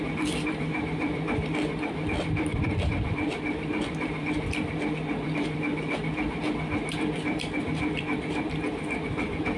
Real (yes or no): no